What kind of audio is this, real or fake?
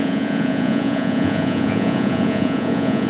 fake